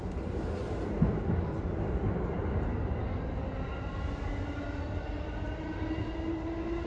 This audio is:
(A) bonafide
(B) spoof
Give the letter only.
A